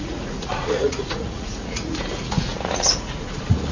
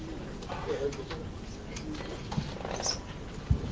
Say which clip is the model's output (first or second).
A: first